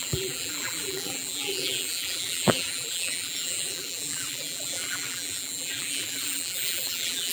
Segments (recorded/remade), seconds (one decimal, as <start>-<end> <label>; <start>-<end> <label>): 0.0-7.3 remade